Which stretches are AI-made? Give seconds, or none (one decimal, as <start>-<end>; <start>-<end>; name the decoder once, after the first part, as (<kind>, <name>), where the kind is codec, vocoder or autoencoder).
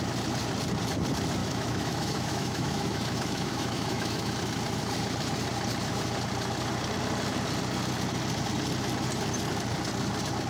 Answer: 1.4-4.3 (autoencoder, DAC-VAE)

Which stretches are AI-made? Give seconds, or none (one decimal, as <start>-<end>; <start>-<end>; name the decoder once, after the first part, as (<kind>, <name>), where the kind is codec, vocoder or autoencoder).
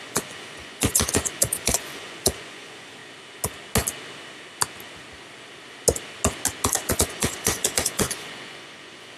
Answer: 0.0-3.0 (vocoder, Vocos); 6.9-9.2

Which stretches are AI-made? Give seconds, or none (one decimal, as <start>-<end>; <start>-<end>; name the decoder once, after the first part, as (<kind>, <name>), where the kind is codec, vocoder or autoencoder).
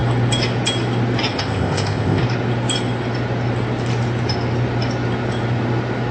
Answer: 1.3-2.2 (codec, ZipCodec)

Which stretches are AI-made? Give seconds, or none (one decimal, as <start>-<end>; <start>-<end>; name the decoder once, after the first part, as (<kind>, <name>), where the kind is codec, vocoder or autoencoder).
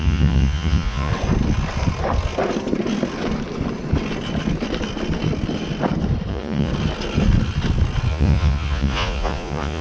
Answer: 0.0-1.1 (vocoder, Vocos); 6.3-6.7; 8.1-9.8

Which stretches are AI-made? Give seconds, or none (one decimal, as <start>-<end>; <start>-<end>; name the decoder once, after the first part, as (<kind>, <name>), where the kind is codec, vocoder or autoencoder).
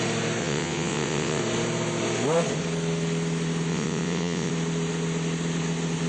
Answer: 0.4-1.4 (vocoder, WaveNeXt); 3.7-4.5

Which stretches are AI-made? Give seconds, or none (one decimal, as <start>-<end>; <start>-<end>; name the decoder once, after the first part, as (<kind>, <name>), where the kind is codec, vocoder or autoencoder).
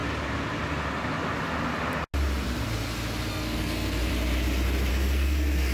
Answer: 3.3-4.1 (codec, SNAC); 4.9-5.7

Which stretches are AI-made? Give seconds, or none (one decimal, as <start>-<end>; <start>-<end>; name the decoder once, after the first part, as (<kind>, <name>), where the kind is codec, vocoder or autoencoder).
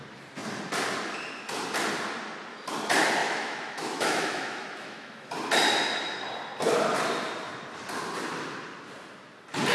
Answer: 3.2-5.3 (autoencoder, DAC-VAE)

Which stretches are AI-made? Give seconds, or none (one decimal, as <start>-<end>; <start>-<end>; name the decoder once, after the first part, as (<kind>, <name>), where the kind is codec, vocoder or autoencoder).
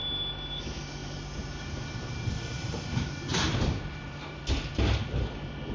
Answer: 1.0-4.4 (vocoder, BigVGAN v2)